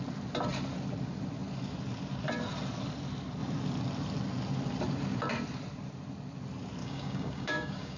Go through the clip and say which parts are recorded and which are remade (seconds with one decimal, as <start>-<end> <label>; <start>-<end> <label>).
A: 0.0-6.8 recorded; 6.8-8.0 remade